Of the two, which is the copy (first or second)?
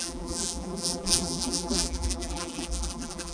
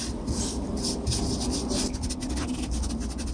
first